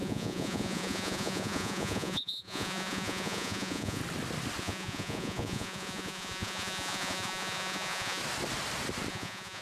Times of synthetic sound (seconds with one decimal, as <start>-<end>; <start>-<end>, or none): 0.0-4.0; 4.6-8.2; 9.1-9.6